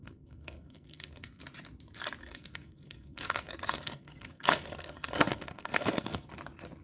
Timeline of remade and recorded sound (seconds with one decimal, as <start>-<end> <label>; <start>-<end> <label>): 0.0-1.4 remade; 1.4-2.2 recorded; 2.2-6.3 remade; 6.3-6.8 recorded